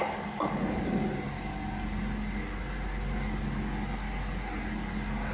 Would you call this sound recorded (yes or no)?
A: yes